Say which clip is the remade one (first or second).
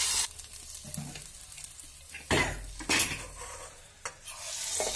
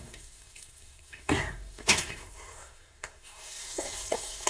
second